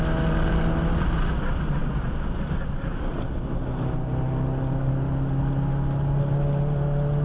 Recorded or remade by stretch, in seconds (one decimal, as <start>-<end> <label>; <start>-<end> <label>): 0.0-7.2 recorded